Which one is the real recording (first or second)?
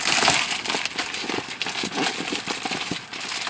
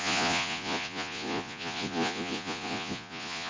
first